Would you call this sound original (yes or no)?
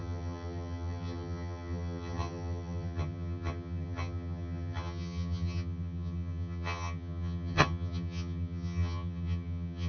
no